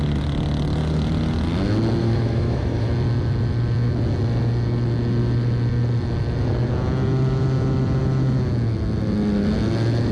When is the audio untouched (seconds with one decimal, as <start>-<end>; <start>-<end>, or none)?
0.0-2.0; 2.9-10.1